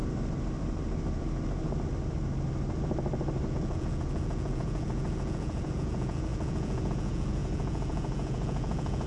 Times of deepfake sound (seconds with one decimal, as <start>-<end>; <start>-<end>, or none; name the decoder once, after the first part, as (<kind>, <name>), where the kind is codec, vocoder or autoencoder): 3.5-9.1 (vocoder, Vocos)